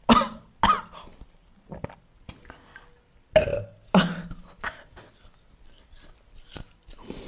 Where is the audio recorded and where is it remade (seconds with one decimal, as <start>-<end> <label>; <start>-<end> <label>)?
0.0-7.3 recorded